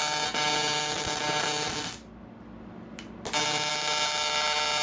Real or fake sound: real